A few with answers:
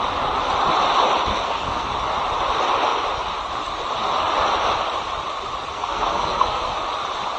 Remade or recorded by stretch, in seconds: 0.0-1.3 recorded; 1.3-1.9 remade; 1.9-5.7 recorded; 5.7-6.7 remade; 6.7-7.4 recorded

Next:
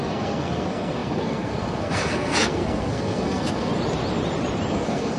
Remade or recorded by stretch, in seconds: 0.0-3.7 remade; 3.7-4.7 recorded; 4.7-5.2 remade

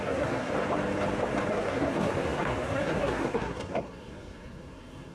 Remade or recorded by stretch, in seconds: 0.0-0.5 remade; 0.5-1.5 recorded; 1.5-5.1 remade

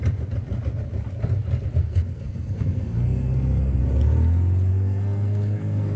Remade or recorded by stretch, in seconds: 0.0-1.8 recorded; 1.8-3.8 remade; 3.8-4.7 recorded; 4.7-6.0 remade

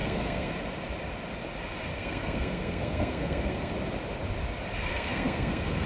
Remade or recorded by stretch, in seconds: 0.0-0.5 remade; 0.5-1.9 recorded; 1.9-3.7 remade; 3.7-4.9 recorded; 4.9-5.9 remade

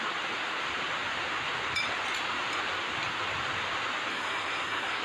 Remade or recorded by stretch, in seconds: 0.0-4.1 recorded; 4.1-5.0 remade